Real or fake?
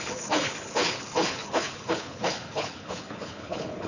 fake